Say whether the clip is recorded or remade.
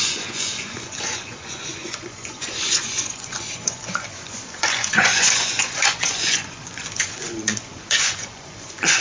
remade